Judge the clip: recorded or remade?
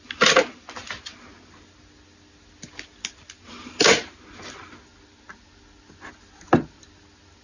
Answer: recorded